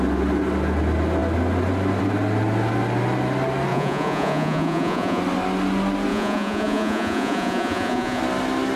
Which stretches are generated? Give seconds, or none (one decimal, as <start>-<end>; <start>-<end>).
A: 3.7-5.2; 6.1-8.2